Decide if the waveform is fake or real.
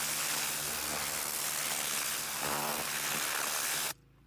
real